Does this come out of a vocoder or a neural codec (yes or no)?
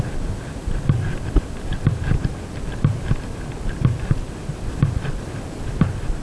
yes